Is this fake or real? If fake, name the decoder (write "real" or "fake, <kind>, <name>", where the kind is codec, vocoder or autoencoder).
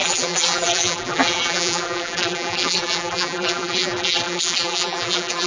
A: fake, vocoder, BigVGAN v2